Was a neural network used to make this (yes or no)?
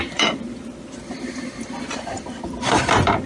yes